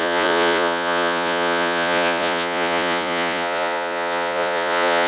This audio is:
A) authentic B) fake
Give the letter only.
B